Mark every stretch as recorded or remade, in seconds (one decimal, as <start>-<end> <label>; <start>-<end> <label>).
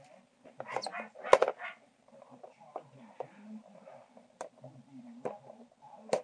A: 0.0-6.2 recorded